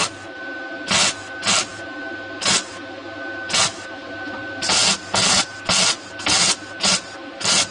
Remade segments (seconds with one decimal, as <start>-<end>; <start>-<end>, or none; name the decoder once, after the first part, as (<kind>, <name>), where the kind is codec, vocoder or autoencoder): none